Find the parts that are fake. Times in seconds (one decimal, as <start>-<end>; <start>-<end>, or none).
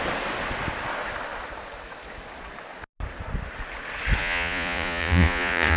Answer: 4.2-5.8